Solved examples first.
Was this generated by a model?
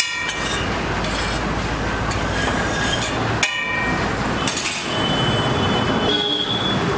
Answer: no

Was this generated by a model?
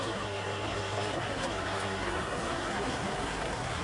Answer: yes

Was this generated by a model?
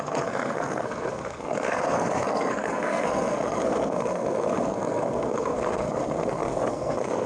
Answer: yes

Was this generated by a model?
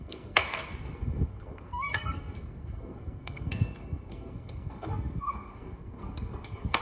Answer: yes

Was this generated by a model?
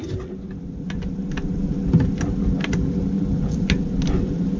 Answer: no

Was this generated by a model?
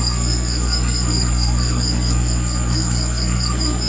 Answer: yes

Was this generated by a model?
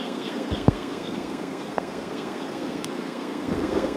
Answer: yes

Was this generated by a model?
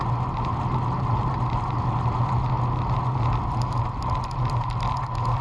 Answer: no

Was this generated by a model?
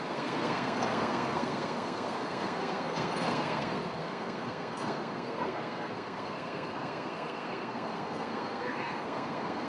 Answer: yes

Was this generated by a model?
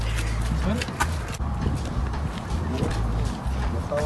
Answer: no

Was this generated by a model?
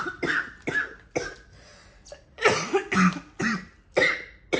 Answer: no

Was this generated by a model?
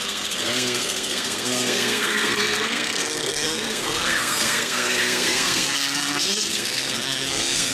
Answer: yes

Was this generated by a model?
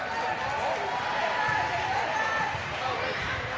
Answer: no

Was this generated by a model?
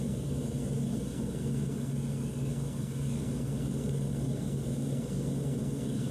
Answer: yes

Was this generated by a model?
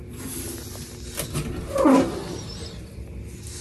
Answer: no